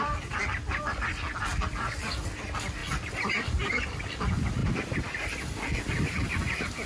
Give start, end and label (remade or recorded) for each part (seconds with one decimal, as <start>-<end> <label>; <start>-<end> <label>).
0.0-6.9 recorded